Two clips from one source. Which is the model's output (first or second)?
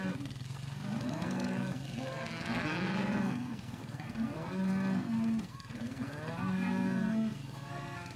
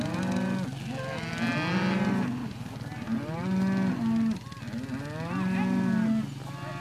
first